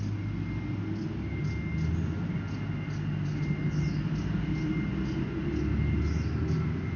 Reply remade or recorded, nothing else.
recorded